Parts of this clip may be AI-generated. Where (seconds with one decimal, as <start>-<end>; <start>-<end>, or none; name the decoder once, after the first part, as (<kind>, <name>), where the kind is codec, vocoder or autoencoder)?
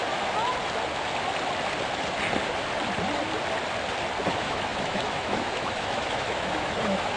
4.3-7.2 (autoencoder, DAC-VAE)